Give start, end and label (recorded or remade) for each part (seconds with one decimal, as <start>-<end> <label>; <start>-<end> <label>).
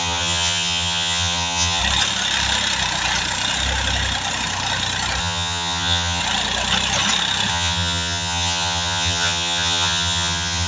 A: 0.0-1.8 remade; 1.8-5.2 recorded; 5.2-6.2 remade; 6.2-7.5 recorded; 7.5-10.7 remade